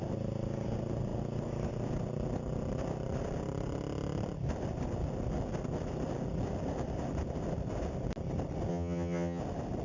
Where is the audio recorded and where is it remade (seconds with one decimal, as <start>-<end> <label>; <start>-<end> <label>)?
0.0-8.7 recorded; 8.7-9.4 remade; 9.4-9.8 recorded